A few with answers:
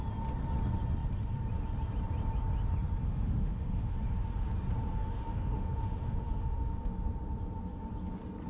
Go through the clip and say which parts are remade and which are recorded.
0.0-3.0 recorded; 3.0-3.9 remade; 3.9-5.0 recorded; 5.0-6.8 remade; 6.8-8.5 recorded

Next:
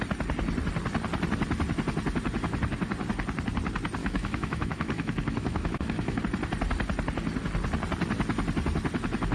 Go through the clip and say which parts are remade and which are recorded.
0.0-4.0 recorded; 4.0-6.2 remade; 6.2-9.3 recorded

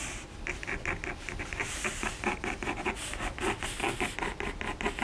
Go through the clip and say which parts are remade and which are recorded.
0.0-5.0 recorded

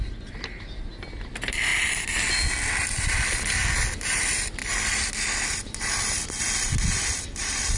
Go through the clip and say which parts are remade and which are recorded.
0.0-7.8 recorded

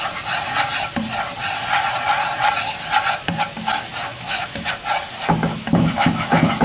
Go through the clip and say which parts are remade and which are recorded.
0.0-4.1 recorded; 4.1-4.7 remade; 4.7-5.5 recorded; 5.5-6.6 remade

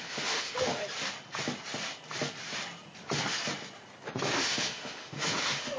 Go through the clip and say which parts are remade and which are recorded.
0.0-0.8 remade; 0.8-4.3 recorded; 4.3-5.8 remade

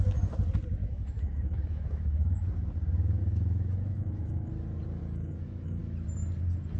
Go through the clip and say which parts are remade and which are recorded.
0.0-0.8 recorded; 0.8-2.5 remade; 2.5-3.2 recorded; 3.2-4.5 remade; 4.5-5.0 recorded; 5.0-5.8 remade; 5.8-6.8 recorded